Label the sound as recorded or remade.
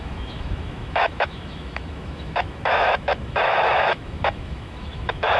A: remade